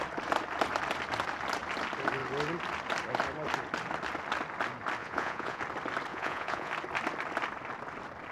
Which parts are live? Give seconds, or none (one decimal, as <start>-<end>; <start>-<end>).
0.0-5.0; 5.6-6.1; 6.7-8.3